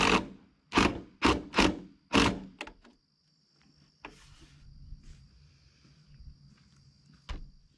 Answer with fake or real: real